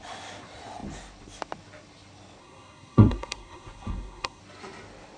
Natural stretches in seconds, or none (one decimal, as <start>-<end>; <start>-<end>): 0.0-2.4; 4.4-5.2